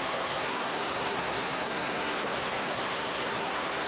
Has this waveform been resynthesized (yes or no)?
yes